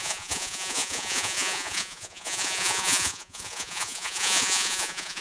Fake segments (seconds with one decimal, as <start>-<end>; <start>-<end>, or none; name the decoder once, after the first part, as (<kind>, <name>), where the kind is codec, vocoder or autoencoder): 0.0-5.2 (vocoder, Vocos)